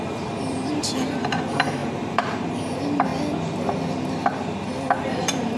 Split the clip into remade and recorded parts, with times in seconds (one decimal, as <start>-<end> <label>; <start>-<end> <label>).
0.0-3.1 remade; 3.1-5.0 recorded; 5.0-5.6 remade